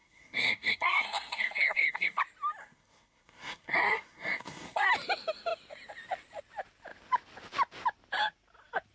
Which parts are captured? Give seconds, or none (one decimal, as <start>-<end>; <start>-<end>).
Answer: 2.2-2.6; 4.9-8.9

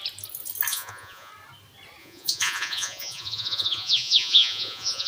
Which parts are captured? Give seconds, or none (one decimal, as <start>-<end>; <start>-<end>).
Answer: 0.0-0.7; 1.3-2.0

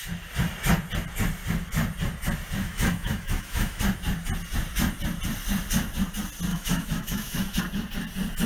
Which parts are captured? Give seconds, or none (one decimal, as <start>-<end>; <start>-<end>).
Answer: 0.0-2.6; 3.8-6.5; 7.6-8.5

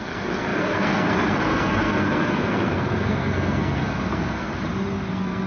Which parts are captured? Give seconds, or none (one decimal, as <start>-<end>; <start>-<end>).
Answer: 4.5-5.1

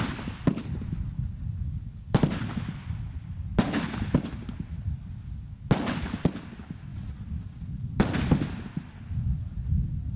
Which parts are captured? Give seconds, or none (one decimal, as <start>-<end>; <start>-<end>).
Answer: 0.0-10.2